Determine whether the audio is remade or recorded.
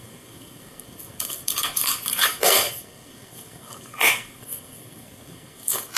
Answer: remade